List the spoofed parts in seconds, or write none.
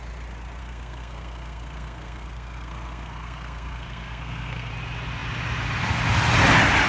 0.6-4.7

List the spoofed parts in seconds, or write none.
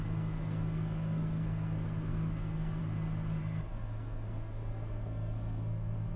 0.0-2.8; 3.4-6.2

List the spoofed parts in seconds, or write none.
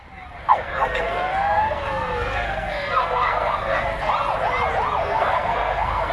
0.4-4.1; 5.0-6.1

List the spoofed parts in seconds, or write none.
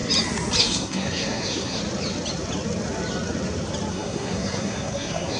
0.6-1.8; 3.9-5.4